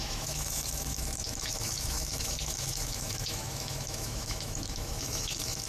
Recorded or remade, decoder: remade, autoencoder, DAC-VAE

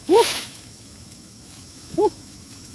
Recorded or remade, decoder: remade, autoencoder, DAC-VAE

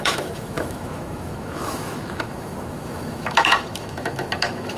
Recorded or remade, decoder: remade, autoencoder, DAC-VAE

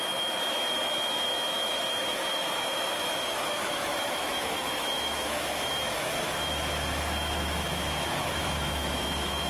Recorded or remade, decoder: remade, autoencoder, DAC-VAE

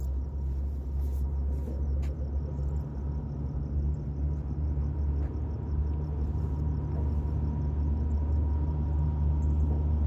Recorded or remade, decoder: recorded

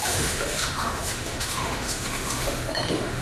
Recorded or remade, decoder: remade, autoencoder, DAC-VAE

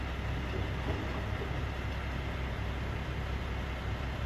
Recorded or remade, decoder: recorded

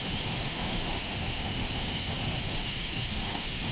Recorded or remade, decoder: remade, autoencoder, DAC-VAE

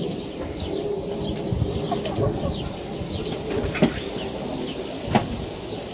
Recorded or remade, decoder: recorded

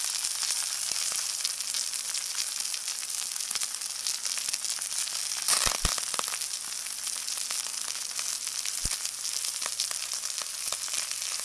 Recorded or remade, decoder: recorded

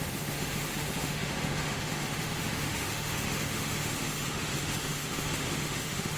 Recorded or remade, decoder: remade, autoencoder, DAC-VAE